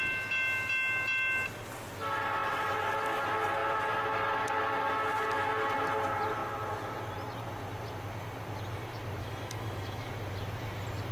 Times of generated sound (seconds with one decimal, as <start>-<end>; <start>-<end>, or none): 9.2-10.1